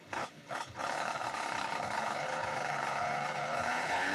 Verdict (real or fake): fake